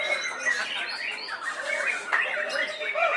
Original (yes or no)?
yes